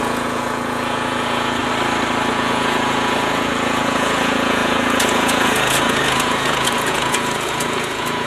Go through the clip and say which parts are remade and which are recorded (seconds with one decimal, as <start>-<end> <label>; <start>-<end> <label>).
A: 0.0-1.6 remade; 1.6-2.3 recorded; 2.3-8.3 remade